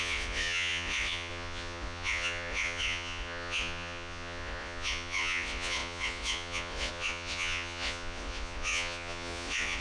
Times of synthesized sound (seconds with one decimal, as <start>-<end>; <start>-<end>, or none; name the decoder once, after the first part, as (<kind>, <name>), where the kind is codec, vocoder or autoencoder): 0.0-9.8 (vocoder, Vocos)